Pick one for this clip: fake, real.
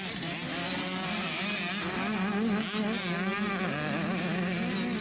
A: real